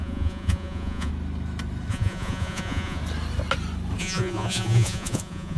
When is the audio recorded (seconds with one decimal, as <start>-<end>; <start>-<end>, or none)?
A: 1.1-1.9; 3.0-4.0